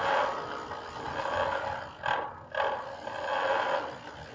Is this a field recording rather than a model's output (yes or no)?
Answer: yes